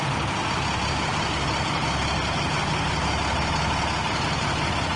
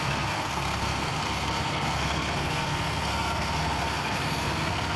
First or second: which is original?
first